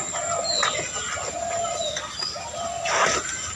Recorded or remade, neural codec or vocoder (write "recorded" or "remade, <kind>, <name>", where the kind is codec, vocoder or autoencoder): recorded